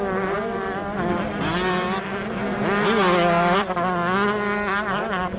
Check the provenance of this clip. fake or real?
real